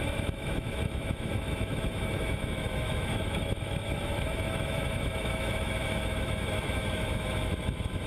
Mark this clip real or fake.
fake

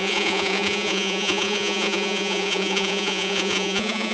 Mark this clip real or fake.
fake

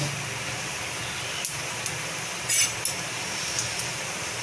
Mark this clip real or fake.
real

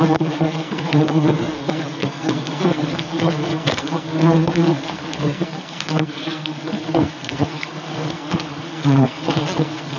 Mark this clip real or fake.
fake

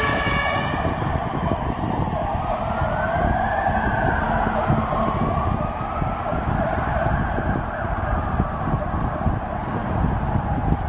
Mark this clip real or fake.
real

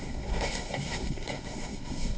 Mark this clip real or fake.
fake